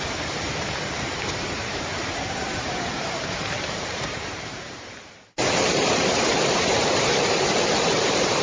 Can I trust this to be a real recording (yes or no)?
no